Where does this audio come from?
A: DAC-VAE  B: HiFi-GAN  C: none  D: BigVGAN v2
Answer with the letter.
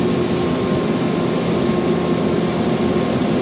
C